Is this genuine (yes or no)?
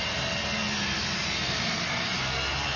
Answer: yes